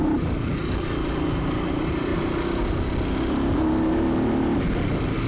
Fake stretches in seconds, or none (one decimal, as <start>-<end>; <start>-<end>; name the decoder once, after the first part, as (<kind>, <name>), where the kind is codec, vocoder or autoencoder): 0.0-0.6 (vocoder, BigVGAN v2); 1.7-2.1